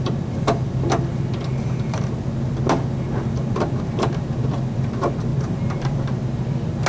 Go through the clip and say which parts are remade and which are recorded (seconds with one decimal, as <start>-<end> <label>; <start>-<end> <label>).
0.0-1.5 recorded; 1.5-2.1 remade; 2.1-5.3 recorded; 5.3-6.2 remade; 6.2-6.9 recorded